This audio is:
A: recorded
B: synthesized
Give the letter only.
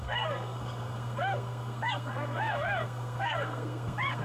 B